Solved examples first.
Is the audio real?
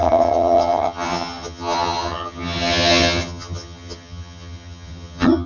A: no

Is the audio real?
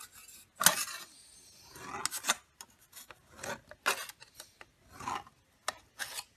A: yes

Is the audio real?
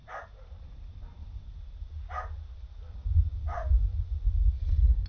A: yes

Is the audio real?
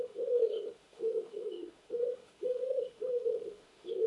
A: no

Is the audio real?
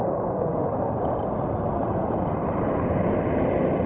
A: yes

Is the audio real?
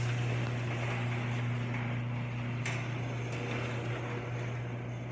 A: yes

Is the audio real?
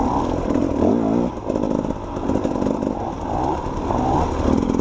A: yes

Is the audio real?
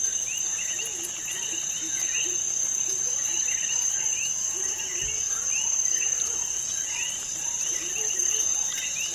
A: yes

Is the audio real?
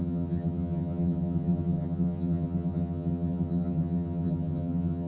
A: no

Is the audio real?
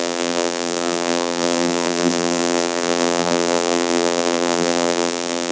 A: no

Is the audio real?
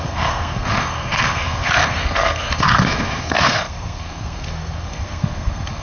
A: no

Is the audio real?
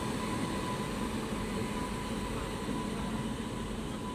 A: yes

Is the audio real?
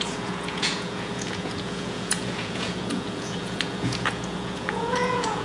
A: no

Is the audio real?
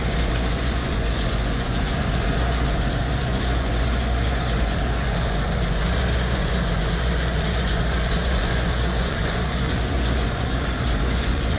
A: no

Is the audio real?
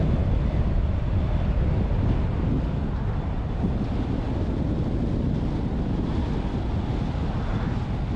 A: yes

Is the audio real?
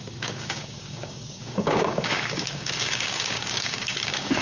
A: no